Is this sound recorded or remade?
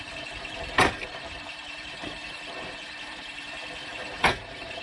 remade